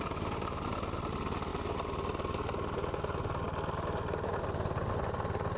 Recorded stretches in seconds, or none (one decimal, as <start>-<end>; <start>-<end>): 0.0-5.6